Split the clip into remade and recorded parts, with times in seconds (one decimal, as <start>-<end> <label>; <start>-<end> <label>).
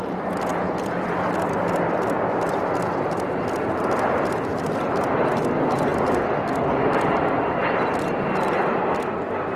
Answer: 0.0-9.6 remade